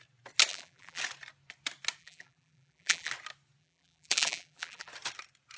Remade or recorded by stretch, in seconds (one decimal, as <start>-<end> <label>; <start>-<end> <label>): 0.0-0.5 recorded; 0.5-1.0 remade; 1.0-2.0 recorded; 2.0-3.1 remade; 3.1-3.6 recorded; 3.6-4.9 remade; 4.9-5.6 recorded